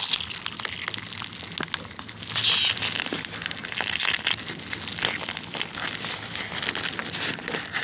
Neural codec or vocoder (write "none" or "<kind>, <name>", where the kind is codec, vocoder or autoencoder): none